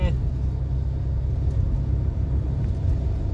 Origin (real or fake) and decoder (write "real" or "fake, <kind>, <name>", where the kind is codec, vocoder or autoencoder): real